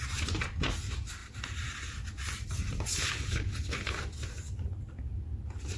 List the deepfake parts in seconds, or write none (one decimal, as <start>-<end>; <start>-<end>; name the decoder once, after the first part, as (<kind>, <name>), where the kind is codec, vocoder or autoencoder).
2.9-4.0 (codec, HILCodec)